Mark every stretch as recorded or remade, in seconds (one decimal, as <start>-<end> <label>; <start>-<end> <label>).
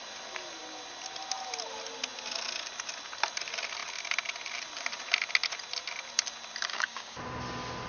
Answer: 0.0-6.7 recorded; 6.7-7.2 remade; 7.2-7.9 recorded